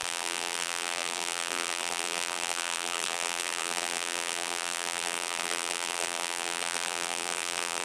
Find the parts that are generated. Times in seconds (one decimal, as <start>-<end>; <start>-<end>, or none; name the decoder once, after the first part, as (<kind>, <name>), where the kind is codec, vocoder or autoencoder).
0.0-7.8 (vocoder, BigVGAN v2)